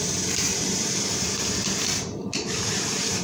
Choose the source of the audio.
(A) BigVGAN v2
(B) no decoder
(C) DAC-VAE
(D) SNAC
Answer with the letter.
A